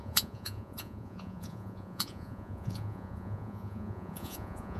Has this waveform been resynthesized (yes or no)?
yes